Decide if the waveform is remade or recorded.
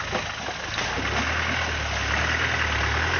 recorded